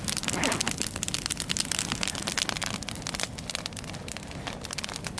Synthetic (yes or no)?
no